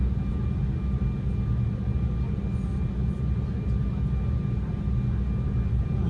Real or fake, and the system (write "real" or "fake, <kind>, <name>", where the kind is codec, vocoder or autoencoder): real